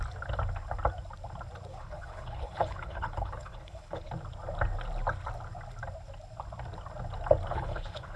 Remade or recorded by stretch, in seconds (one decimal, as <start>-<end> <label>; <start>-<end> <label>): 0.0-1.7 recorded; 1.7-4.1 remade; 4.1-7.5 recorded; 7.5-8.2 remade